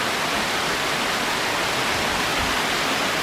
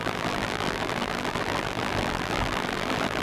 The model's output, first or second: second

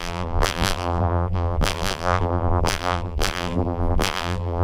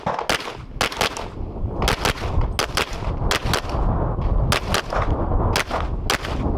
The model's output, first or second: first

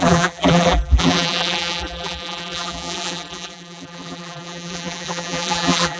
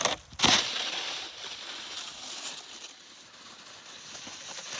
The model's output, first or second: first